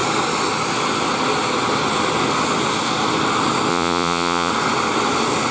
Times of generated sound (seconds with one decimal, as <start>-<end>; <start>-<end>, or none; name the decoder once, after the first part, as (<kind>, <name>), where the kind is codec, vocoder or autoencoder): 3.7-4.5 (vocoder, Vocos)

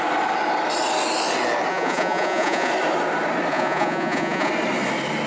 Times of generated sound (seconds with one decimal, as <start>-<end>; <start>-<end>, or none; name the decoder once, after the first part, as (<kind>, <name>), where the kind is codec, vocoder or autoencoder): 1.7-2.7 (vocoder, Vocos); 3.5-4.5

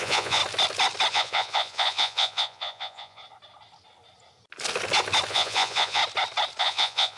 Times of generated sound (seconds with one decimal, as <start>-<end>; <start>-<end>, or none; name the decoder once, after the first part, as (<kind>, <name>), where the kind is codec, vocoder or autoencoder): 0.0-0.4 (vocoder, Vocos); 1.1-3.2; 5.3-6.0; 6.6-7.2

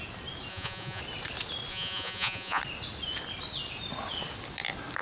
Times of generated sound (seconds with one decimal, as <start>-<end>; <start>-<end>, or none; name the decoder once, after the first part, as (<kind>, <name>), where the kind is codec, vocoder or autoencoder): 0.5-1.0 (vocoder, Vocos); 1.7-2.6